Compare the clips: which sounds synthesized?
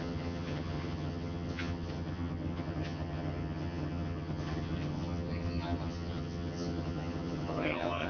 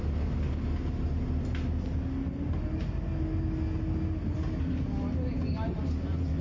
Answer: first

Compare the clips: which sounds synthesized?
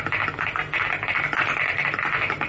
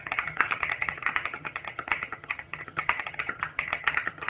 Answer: second